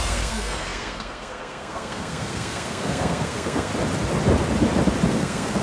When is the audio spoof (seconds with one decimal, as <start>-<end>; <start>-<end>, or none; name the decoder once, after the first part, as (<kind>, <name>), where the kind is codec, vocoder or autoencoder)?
0.0-3.7 (codec, SNAC); 5.1-5.6